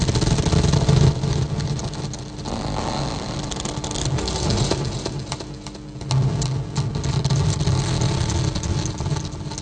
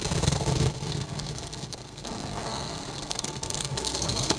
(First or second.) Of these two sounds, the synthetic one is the second